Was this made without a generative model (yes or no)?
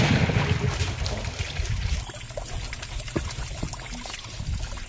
yes